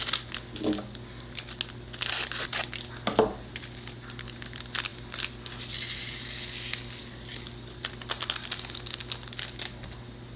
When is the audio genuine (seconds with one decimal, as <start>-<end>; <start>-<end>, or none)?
0.0-10.4